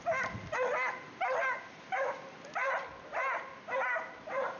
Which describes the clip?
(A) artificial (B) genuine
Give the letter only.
B